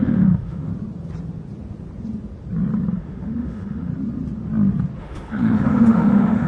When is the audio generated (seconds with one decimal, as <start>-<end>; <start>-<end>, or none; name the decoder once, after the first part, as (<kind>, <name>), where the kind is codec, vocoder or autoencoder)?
0.0-0.7 (autoencoder, DAC-VAE); 3.0-3.9; 5.0-6.5